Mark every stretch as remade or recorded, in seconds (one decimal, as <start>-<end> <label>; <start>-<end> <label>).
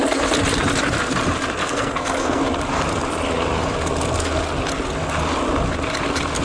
0.0-1.6 recorded; 1.6-2.4 remade; 2.4-6.4 recorded